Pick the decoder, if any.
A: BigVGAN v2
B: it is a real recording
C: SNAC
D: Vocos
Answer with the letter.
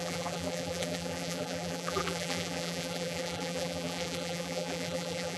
A